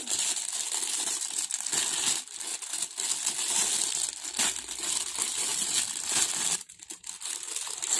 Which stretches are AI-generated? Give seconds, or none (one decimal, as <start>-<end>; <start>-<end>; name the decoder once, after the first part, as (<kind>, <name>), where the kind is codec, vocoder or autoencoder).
none